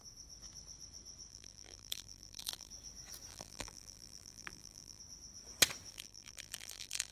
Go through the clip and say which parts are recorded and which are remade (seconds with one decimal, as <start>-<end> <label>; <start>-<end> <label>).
0.0-1.3 recorded; 1.3-2.7 remade; 2.7-3.3 recorded; 3.3-5.0 remade; 5.0-5.9 recorded; 5.9-7.1 remade